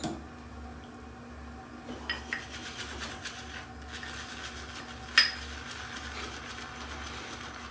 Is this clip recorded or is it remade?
recorded